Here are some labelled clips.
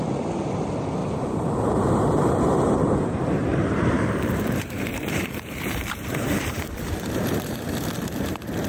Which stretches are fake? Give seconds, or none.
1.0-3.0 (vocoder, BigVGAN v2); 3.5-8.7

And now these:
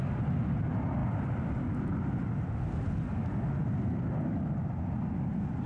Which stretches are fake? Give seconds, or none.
none

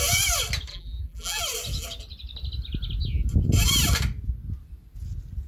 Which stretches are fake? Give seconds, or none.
0.7-1.4 (vocoder, BigVGAN v2)

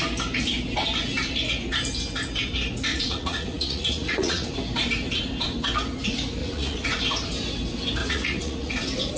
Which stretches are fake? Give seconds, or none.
2.9-4.5 (vocoder, Vocos); 6.4-7.0; 8.0-8.7

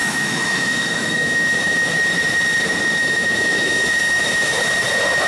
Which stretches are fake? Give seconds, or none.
0.0-1.9 (autoencoder, DAC-VAE); 3.0-4.6

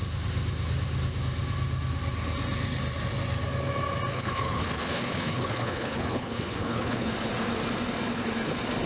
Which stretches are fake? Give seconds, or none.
4.1-7.1 (codec, HILCodec)

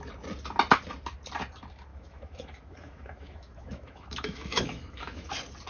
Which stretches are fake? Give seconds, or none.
1.9-5.3 (autoencoder, DAC-VAE)

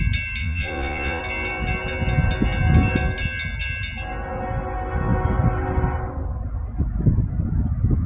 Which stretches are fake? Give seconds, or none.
0.4-1.2 (vocoder, Vocos)